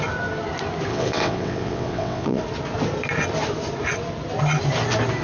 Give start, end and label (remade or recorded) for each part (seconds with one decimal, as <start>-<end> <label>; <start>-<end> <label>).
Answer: 0.0-0.9 recorded; 0.9-2.4 remade; 2.4-5.2 recorded